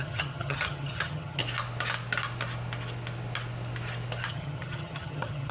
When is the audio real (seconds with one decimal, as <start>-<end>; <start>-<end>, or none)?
1.4-4.3